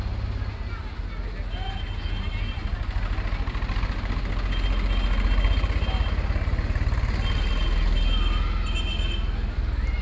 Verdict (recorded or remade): recorded